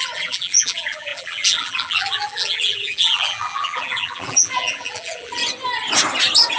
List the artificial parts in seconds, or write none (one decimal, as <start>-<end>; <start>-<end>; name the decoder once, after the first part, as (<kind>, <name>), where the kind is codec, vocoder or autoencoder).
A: 0.0-5.4 (vocoder, BigVGAN v2)